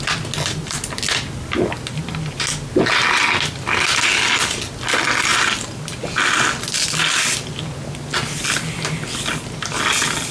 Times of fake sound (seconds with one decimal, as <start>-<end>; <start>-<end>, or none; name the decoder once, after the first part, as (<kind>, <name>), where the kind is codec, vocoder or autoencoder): none